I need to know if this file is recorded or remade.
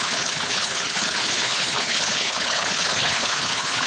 remade